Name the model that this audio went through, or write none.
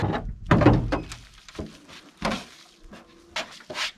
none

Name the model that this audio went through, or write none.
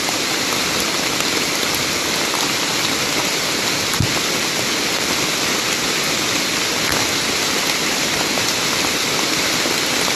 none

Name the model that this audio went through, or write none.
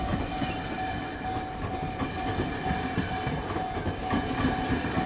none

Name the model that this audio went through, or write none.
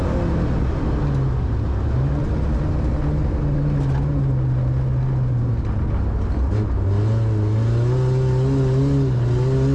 none